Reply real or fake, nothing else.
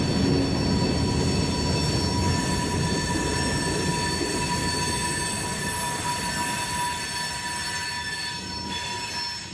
real